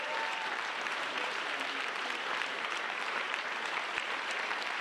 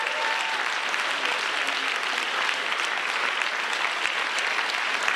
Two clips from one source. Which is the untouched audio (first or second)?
second